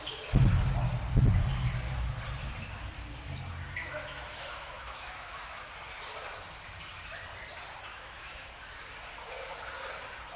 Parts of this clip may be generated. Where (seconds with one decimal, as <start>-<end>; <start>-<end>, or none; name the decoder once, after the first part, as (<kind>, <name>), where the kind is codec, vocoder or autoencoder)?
3.8-5.7 (autoencoder, DAC-VAE); 7.9-8.5